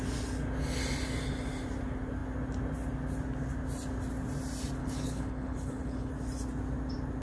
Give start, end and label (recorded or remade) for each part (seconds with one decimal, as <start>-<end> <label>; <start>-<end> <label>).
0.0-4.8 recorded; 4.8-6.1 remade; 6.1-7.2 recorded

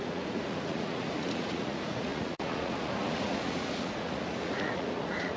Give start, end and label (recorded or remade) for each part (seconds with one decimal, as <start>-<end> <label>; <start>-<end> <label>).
0.0-5.4 remade

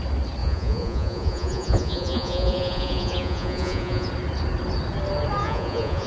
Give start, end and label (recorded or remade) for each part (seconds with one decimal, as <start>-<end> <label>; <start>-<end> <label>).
0.0-0.4 recorded; 0.4-4.1 remade; 4.1-5.4 recorded; 5.4-6.1 remade

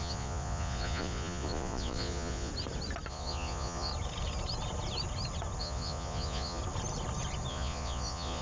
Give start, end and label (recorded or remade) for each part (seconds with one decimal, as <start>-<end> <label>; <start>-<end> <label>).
0.0-2.5 remade; 2.5-3.1 recorded; 3.1-3.9 remade; 3.9-5.6 recorded; 5.6-6.6 remade; 6.6-7.5 recorded; 7.5-8.4 remade